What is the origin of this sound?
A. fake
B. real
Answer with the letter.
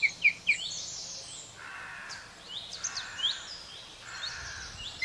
B